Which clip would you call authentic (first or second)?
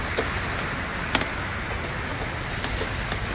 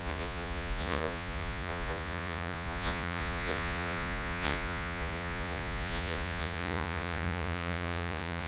first